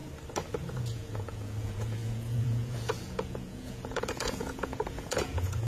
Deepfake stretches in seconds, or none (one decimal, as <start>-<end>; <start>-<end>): 0.8-5.7